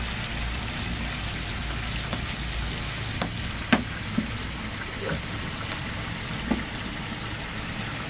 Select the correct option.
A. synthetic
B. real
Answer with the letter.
B